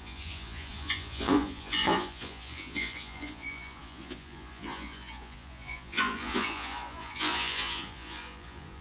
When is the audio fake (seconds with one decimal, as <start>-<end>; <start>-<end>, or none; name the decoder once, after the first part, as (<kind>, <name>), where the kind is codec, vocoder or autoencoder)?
0.0-8.8 (vocoder, Vocos)